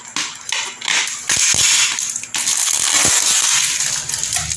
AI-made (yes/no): no